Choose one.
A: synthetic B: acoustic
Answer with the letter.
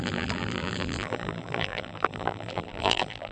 A